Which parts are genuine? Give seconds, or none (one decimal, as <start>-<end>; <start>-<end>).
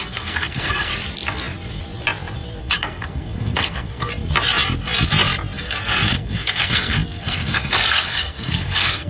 0.9-2.6; 4.1-5.6